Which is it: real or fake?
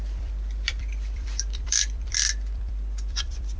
fake